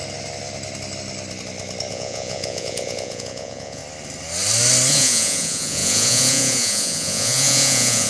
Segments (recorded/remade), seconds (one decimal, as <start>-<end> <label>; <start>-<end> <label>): 0.0-1.9 recorded; 1.9-3.8 remade; 3.8-4.9 recorded; 4.9-8.1 remade